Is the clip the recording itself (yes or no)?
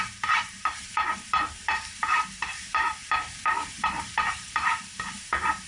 no